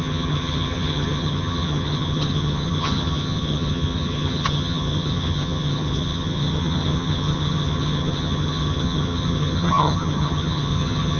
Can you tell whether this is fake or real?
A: fake